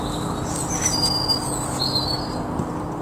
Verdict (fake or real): real